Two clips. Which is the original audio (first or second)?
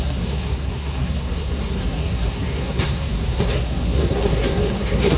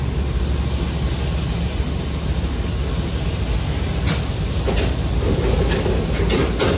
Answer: second